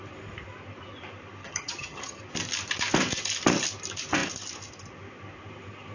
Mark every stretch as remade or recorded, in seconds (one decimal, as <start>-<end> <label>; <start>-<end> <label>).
0.0-1.4 recorded; 1.4-2.2 remade; 2.2-5.9 recorded